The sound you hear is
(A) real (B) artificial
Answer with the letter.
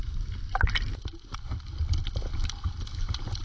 A